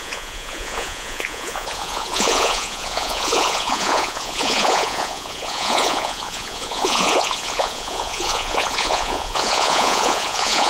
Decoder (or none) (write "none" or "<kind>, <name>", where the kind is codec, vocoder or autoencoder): vocoder, Vocos